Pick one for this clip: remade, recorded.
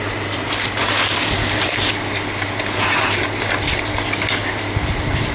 recorded